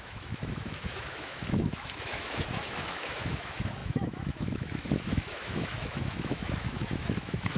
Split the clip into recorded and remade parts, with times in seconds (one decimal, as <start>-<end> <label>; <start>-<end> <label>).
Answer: 0.0-7.6 remade